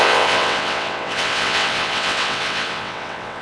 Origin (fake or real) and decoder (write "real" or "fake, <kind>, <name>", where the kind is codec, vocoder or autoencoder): fake, vocoder, WaveNeXt